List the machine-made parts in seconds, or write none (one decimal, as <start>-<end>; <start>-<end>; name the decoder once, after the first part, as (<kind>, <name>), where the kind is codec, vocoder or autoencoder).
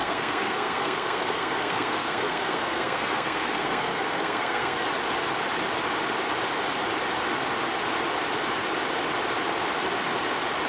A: 0.0-4.9 (codec, SNAC)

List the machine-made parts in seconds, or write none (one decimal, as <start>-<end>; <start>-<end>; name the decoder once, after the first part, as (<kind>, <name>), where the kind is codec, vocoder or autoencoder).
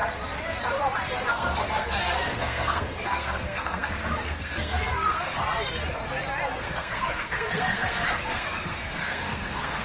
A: 1.3-5.4 (codec, SNAC); 6.6-9.8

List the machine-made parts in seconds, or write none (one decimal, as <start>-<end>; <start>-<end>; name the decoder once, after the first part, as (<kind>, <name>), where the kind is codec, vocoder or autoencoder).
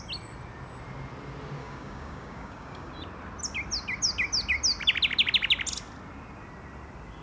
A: 1.6-2.9 (codec, DAC)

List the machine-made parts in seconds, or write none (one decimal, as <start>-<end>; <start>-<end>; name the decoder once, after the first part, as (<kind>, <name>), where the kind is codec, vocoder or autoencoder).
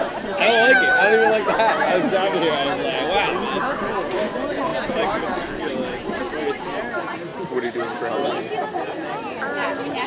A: 4.7-6.2 (vocoder, BigVGAN v2)